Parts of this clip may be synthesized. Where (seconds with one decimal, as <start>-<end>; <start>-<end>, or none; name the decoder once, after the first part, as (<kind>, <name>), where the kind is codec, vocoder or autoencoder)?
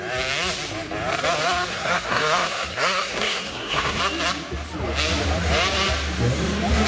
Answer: 1.7-4.0 (codec, SNAC)